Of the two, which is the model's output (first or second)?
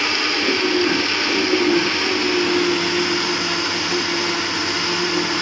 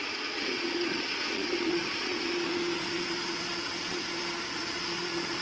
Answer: second